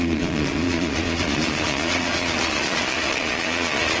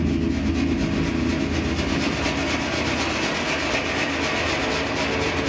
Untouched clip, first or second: second